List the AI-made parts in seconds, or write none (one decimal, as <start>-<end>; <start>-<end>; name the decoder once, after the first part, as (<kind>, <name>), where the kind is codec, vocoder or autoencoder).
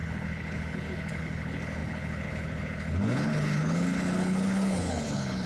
0.0-5.5 (codec, HILCodec)